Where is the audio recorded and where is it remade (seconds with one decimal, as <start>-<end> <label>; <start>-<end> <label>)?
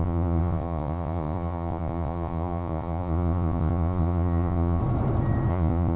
0.0-4.8 remade; 4.8-5.5 recorded; 5.5-6.0 remade